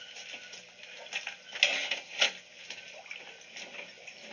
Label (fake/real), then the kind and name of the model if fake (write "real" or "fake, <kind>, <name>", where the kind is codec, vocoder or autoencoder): real